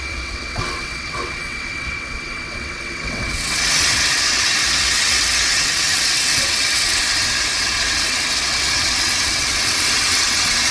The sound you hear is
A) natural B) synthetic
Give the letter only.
B